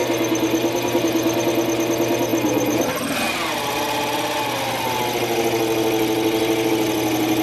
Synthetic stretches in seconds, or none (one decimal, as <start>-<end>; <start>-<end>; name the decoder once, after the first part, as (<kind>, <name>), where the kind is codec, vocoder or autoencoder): none